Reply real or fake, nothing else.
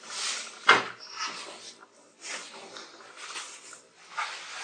real